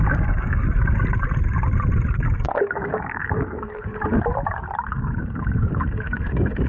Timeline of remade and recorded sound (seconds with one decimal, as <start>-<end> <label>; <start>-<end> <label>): 0.0-0.6 remade; 0.6-2.1 recorded; 2.1-3.9 remade; 3.9-4.9 recorded; 4.9-6.7 remade